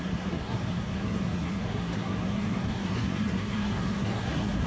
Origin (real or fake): fake